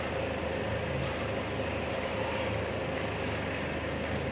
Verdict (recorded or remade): recorded